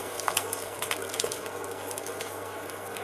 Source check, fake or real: fake